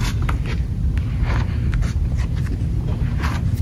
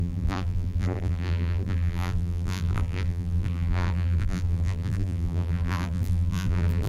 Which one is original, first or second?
first